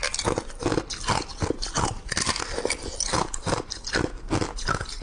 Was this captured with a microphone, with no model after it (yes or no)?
yes